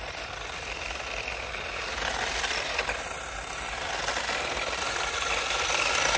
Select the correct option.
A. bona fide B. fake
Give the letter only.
A